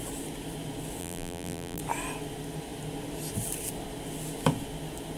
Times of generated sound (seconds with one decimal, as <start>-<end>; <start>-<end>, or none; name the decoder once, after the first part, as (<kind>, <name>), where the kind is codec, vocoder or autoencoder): 1.0-1.8 (vocoder, BigVGAN v2)